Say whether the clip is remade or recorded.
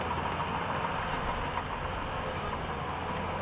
recorded